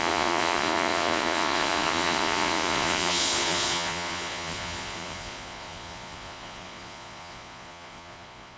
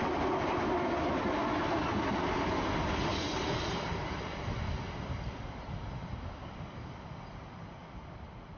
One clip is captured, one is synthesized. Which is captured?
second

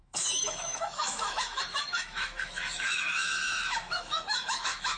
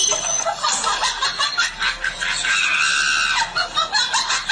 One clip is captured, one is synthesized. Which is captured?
second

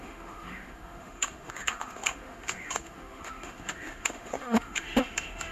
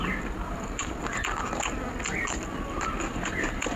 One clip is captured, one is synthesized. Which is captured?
second